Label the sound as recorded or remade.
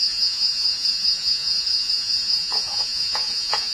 remade